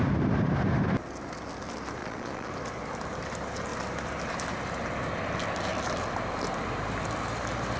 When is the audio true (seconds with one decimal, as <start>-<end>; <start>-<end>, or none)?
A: 0.0-2.0; 2.5-7.8